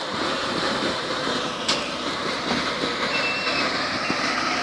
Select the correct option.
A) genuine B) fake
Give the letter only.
B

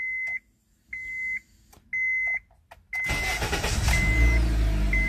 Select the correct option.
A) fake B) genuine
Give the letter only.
B